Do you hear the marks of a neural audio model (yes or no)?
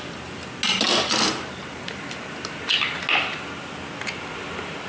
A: no